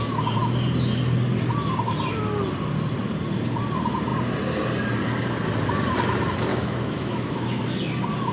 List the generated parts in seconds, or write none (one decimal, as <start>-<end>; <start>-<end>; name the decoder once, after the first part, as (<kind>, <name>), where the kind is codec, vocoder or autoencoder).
6.5-7.6 (autoencoder, DAC-VAE)